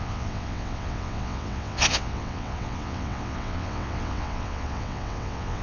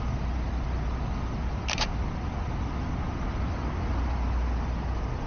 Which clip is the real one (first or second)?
second